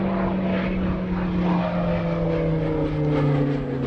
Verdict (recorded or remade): recorded